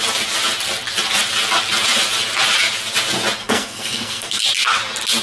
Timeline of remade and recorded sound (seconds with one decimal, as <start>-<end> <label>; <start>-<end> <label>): 0.0-3.4 recorded; 3.4-4.4 remade; 4.4-5.2 recorded

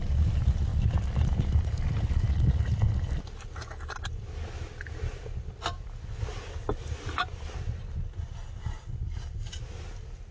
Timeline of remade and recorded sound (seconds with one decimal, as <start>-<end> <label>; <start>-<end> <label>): 0.0-10.3 recorded

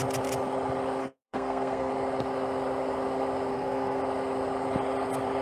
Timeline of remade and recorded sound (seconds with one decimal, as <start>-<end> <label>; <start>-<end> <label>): 0.0-1.0 recorded; 1.0-1.9 remade; 1.9-3.5 recorded; 3.5-4.0 remade; 4.0-5.4 recorded

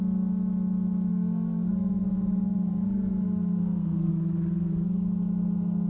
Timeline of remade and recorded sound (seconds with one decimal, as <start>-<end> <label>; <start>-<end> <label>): 0.0-1.1 recorded; 1.1-4.1 remade; 4.1-5.9 recorded

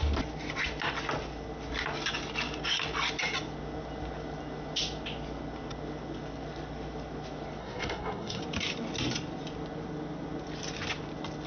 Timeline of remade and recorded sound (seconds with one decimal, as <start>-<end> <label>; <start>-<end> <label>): 0.0-7.6 recorded; 7.6-8.4 remade; 8.4-11.5 recorded

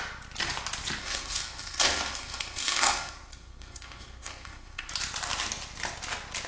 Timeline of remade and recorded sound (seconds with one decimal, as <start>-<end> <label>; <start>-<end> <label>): 0.0-1.0 recorded; 1.0-4.9 remade; 4.9-6.5 recorded

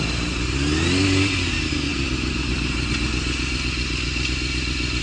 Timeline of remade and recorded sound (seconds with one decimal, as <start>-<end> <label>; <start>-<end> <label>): 0.0-5.0 recorded

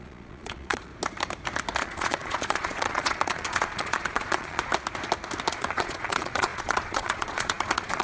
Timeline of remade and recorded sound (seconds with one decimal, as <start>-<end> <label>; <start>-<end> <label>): 0.0-0.9 remade; 0.9-1.8 recorded; 1.8-4.7 remade; 4.7-5.5 recorded; 5.5-8.0 remade